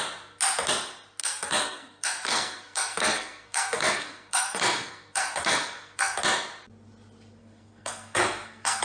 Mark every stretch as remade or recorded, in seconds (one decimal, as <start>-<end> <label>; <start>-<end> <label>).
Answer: 0.0-1.2 recorded; 1.2-6.2 remade; 6.2-7.4 recorded; 7.4-8.8 remade